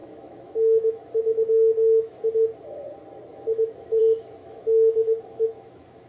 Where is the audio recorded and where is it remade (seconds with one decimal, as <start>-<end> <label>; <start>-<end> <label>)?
0.0-2.2 remade; 2.2-3.3 recorded; 3.3-4.0 remade; 4.0-4.4 recorded; 4.4-6.1 remade